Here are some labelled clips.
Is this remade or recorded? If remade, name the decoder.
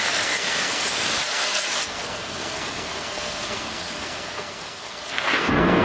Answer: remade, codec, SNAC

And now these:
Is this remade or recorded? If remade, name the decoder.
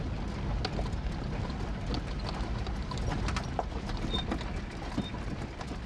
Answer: recorded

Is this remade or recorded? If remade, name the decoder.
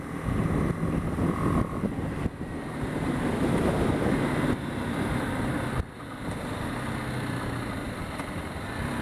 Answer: recorded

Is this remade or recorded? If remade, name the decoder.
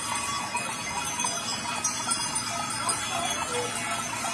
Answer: recorded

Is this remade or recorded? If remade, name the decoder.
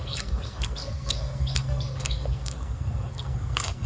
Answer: remade, codec, SNAC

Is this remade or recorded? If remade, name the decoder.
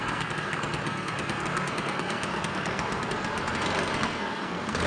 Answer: remade, codec, SNAC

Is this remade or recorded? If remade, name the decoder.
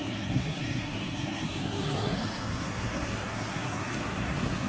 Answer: remade, codec, SNAC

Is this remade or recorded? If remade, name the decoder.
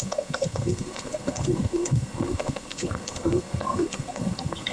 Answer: remade, codec, SNAC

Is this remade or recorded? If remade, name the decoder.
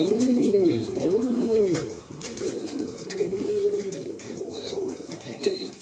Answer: remade, codec, SNAC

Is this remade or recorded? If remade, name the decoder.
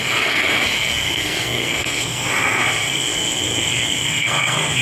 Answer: remade, codec, SNAC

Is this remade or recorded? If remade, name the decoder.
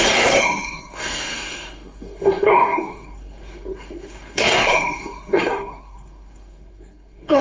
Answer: remade, codec, SNAC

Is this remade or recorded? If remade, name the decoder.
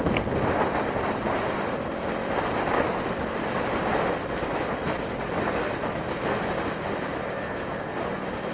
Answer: recorded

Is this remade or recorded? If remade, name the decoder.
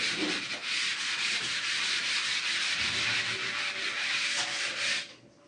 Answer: recorded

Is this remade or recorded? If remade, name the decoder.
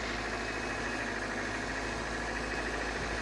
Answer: recorded